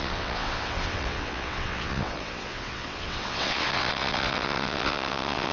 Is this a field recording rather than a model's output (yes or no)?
no